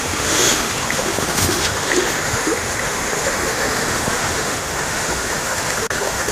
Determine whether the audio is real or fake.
fake